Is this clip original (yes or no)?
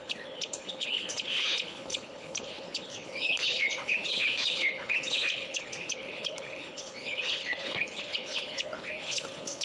no